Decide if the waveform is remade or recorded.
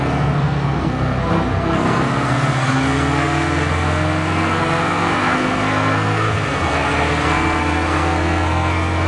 remade